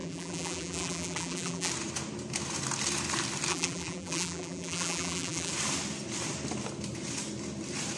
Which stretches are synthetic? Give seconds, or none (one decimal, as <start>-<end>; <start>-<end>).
0.0-1.7; 3.5-5.5